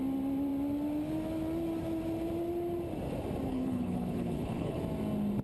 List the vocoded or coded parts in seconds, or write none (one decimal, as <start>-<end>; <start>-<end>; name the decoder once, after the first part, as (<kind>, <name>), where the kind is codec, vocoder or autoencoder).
3.5-4.8 (codec, HILCodec)